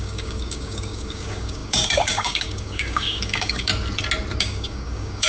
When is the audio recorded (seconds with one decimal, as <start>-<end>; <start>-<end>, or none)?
3.7-4.4